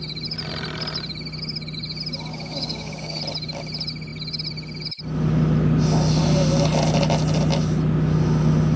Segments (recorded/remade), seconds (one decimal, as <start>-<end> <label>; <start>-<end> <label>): 0.0-2.3 recorded; 2.3-3.2 remade; 3.2-8.8 recorded